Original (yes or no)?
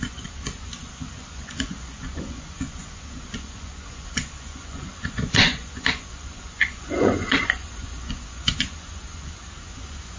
no